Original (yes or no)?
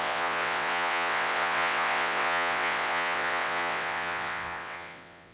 no